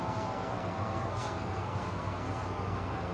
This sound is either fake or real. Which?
fake